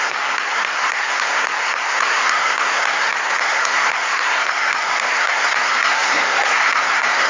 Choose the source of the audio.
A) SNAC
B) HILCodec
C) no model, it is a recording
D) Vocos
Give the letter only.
A